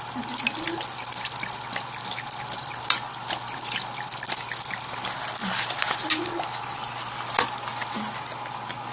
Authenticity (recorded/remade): recorded